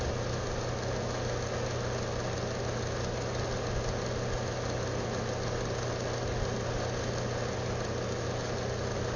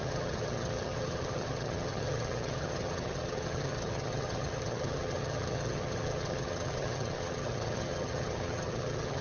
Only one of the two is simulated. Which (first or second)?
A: second